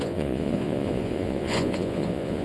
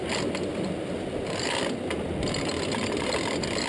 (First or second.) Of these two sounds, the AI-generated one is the first